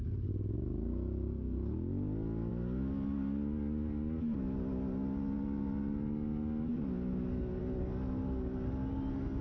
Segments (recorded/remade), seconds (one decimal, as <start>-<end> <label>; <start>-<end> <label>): 0.0-9.4 recorded